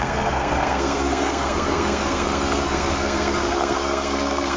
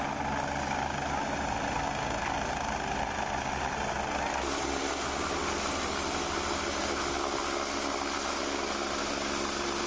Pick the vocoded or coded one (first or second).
first